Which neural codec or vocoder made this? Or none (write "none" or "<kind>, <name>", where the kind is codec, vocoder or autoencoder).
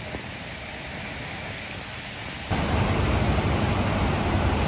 none